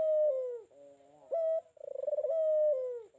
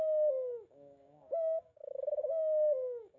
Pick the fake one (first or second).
second